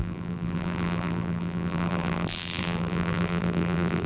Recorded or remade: remade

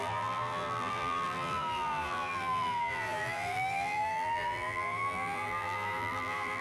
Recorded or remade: remade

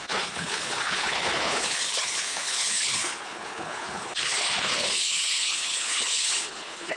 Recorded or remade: remade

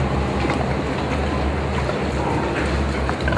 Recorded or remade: recorded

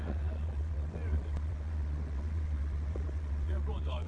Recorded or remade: remade